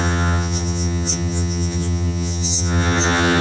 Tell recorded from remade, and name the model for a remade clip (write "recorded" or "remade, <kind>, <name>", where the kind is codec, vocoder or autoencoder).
remade, vocoder, HiFi-GAN